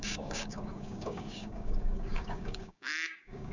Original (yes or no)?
no